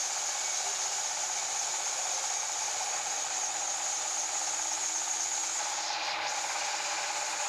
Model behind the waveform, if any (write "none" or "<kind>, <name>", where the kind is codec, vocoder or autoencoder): none